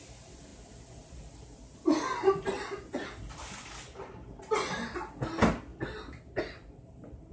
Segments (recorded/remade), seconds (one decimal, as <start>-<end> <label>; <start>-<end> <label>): 0.0-7.3 recorded